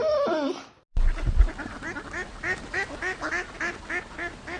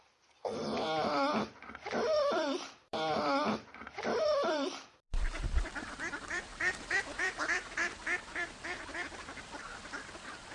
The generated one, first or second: second